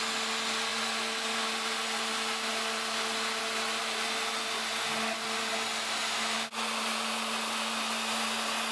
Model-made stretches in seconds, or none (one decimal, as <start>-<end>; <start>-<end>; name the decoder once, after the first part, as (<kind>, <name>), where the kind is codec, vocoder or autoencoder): none